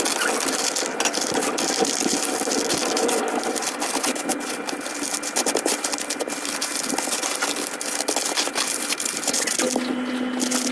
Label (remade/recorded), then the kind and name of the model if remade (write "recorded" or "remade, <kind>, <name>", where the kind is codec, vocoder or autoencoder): recorded